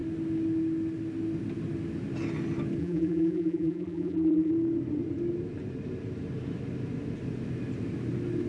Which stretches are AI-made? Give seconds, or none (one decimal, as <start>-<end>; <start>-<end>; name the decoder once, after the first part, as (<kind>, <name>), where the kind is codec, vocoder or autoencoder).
2.8-4.5 (vocoder, BigVGAN v2)